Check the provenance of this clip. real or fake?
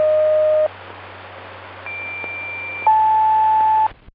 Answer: real